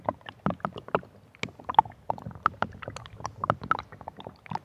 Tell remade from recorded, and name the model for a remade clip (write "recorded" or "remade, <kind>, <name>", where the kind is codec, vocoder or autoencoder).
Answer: recorded